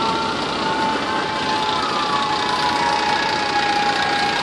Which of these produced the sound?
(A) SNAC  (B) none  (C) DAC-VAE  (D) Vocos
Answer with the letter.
B